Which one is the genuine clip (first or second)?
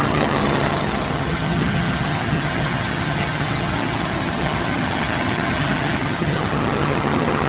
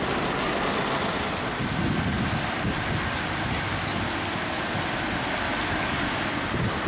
second